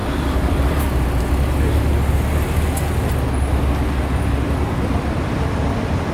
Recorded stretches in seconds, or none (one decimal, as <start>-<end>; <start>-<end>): 0.8-6.1